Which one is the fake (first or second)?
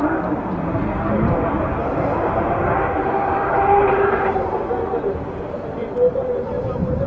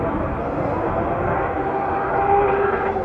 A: first